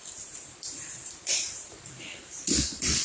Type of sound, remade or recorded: remade